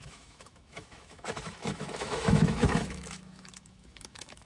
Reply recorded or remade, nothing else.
remade